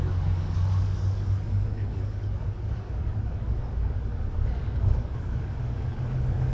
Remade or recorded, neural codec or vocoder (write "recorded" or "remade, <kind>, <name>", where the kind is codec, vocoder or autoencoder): remade, codec, DAC